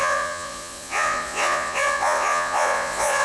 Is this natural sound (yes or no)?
no